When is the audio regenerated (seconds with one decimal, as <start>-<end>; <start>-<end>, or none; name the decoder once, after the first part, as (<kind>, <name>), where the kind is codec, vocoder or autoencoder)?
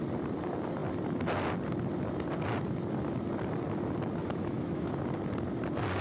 4.2-4.9 (autoencoder, DAC-VAE)